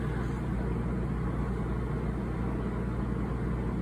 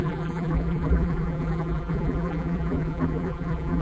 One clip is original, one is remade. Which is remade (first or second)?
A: second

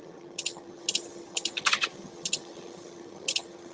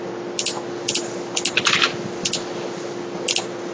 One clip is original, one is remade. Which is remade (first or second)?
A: first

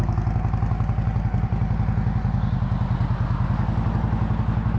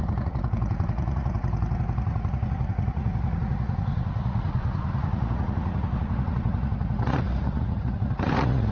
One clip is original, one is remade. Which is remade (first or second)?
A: second